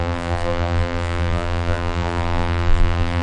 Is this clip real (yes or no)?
no